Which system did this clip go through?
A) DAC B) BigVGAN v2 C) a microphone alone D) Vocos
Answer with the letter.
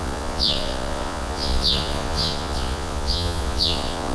D